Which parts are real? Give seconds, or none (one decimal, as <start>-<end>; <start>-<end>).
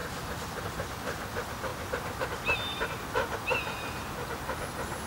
0.6-1.7; 3.0-5.1